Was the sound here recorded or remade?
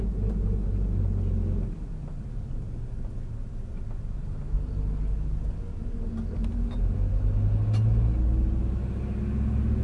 recorded